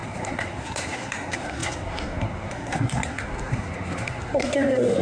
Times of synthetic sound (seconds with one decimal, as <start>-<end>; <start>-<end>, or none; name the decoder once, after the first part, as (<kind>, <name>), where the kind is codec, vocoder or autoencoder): 0.0-5.0 (codec, SNAC)